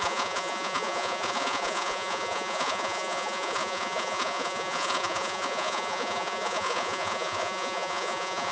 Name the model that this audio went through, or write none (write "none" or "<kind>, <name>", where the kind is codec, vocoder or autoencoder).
vocoder, Vocos